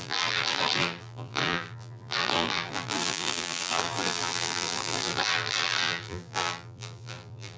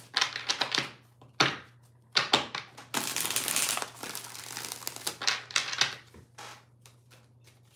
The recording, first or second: second